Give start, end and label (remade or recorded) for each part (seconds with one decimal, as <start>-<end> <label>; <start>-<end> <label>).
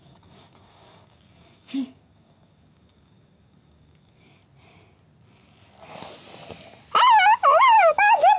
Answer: 0.0-4.4 remade; 4.4-7.6 recorded; 7.6-8.4 remade